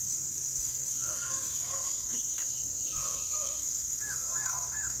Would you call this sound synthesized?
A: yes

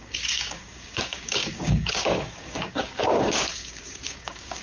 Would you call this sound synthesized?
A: yes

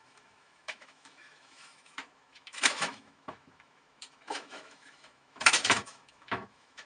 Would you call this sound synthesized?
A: yes